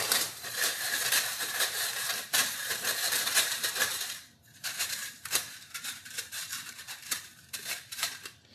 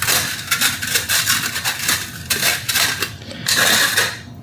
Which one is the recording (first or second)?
second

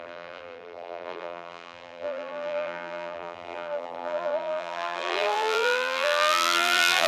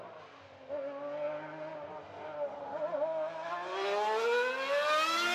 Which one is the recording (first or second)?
second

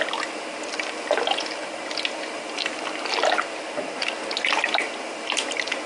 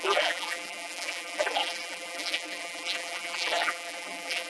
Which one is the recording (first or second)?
first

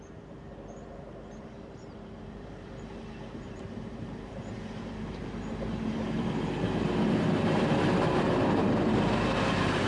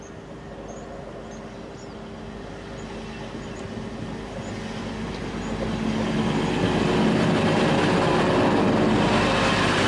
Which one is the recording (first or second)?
second